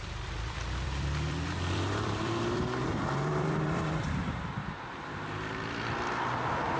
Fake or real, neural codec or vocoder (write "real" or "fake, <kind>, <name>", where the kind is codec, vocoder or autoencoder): fake, vocoder, BigVGAN v2